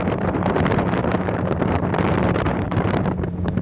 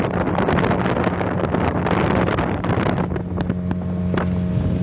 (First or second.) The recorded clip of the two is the second